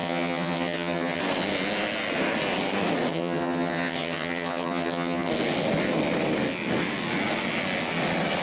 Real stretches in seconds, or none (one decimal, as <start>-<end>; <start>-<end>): 1.2-3.1; 5.3-8.4